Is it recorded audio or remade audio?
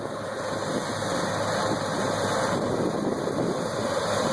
recorded